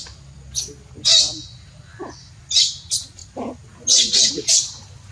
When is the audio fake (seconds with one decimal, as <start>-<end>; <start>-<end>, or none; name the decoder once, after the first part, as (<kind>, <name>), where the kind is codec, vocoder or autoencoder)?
none